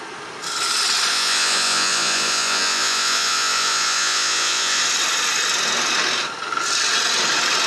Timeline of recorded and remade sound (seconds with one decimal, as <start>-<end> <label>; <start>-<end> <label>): 0.0-1.1 recorded; 1.1-4.8 remade; 4.8-7.7 recorded